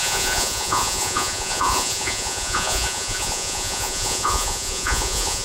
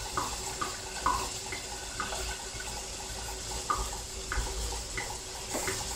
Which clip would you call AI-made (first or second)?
first